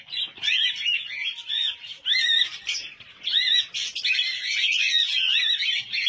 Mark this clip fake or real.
real